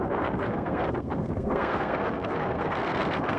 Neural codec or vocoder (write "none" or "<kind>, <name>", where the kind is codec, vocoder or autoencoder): codec, SNAC